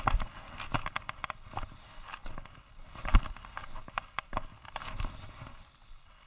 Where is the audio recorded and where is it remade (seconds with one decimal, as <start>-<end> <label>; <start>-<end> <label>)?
0.0-6.3 recorded